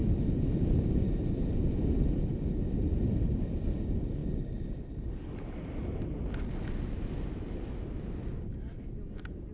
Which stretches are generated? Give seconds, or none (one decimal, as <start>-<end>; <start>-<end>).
none